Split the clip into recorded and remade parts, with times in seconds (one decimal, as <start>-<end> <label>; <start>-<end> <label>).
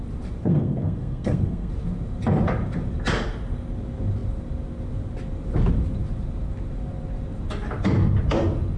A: 0.0-0.4 recorded; 0.4-1.7 remade; 1.7-8.8 recorded